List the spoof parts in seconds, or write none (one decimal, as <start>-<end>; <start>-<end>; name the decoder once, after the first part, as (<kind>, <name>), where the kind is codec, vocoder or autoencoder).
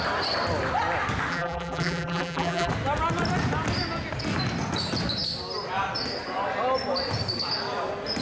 1.3-2.7 (vocoder, BigVGAN v2)